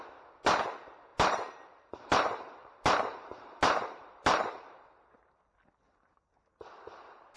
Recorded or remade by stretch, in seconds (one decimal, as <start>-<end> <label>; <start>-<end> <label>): 0.0-1.1 recorded; 1.1-5.4 remade; 5.4-7.4 recorded